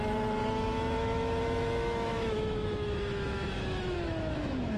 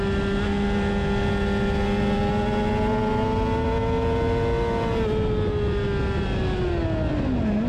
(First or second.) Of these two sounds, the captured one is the second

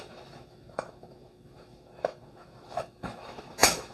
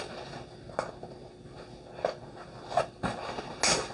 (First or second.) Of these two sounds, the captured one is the second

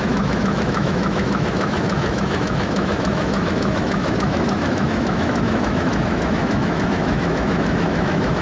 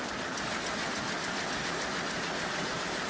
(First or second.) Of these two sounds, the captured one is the second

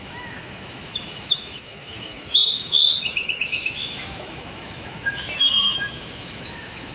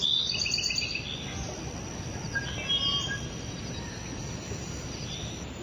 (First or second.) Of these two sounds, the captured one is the second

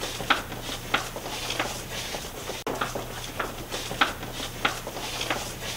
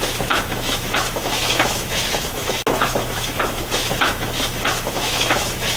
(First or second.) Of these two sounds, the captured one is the first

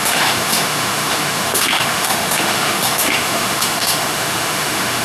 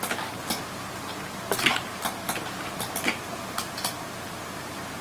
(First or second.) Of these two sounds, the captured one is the second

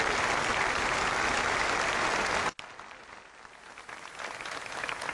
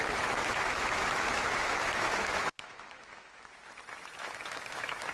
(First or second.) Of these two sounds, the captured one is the first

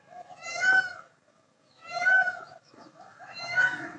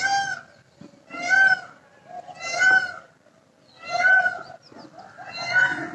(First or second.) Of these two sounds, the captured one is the second